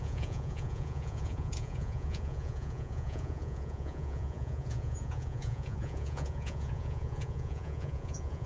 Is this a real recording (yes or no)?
no